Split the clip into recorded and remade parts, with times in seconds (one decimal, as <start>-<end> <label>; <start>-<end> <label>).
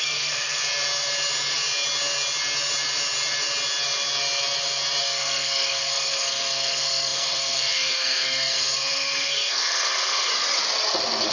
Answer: 0.0-0.6 remade; 0.6-5.0 recorded; 5.0-10.3 remade; 10.3-11.3 recorded